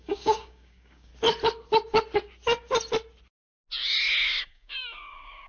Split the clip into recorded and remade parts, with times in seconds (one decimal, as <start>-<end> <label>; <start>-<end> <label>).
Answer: 0.0-1.1 remade; 1.1-4.4 recorded; 4.4-5.5 remade